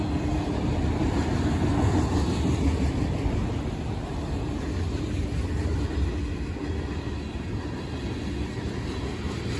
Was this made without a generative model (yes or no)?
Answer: yes